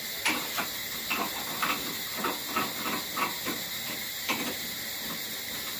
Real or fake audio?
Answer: fake